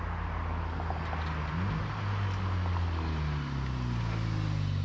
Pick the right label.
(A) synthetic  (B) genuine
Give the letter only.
B